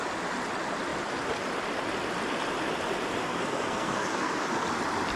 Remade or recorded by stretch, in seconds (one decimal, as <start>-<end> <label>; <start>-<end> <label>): 0.0-3.2 recorded; 3.2-4.4 remade; 4.4-5.2 recorded